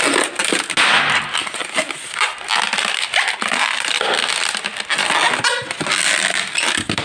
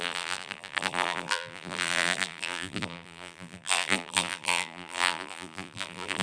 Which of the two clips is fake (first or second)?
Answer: second